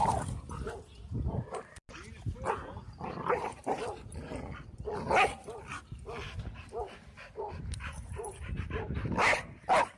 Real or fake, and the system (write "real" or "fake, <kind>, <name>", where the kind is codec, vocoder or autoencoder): real